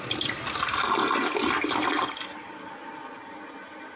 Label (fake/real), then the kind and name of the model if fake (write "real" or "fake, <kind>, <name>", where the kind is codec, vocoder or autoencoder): real